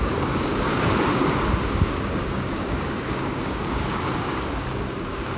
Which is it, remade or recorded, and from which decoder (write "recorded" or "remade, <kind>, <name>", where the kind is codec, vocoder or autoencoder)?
remade, codec, DAC